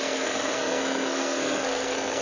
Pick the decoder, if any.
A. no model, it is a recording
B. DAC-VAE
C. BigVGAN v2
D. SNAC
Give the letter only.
D